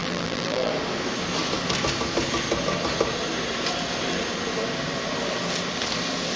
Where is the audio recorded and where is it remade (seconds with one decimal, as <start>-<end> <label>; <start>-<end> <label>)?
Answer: 0.0-0.7 remade; 0.7-6.4 recorded